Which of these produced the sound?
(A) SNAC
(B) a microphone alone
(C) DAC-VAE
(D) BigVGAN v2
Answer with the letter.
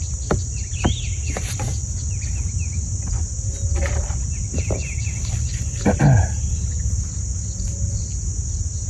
B